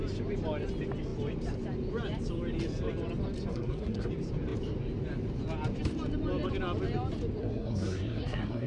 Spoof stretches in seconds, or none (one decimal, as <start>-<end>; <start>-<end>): 3.5-4.1; 7.4-8.7